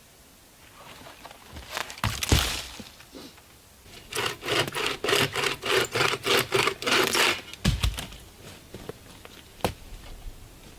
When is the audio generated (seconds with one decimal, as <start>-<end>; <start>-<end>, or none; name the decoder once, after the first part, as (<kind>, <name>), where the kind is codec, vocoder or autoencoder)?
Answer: none